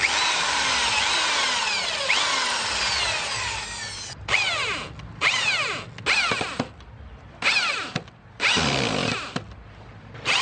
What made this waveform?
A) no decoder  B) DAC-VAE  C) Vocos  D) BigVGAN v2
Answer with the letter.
A